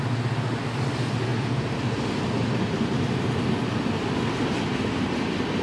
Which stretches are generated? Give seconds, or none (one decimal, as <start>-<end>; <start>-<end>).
none